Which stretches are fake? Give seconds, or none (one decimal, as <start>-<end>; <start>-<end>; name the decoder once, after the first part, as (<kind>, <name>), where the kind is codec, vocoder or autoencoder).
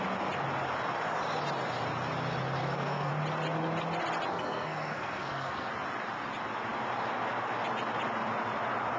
2.6-3.1 (codec, SNAC); 4.3-5.7